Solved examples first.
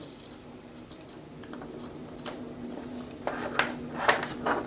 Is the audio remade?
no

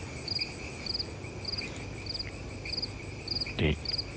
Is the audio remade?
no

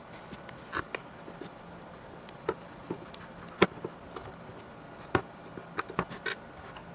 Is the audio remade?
no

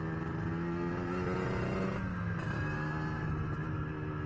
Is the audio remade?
no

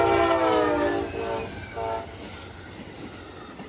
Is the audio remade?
no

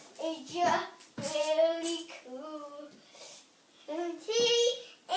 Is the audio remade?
no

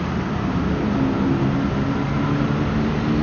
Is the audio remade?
no